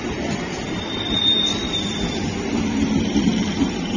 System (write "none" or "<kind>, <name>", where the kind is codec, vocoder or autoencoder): vocoder, BigVGAN v2